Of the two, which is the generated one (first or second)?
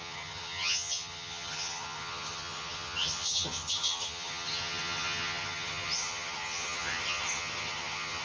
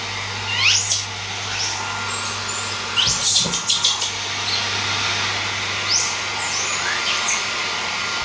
first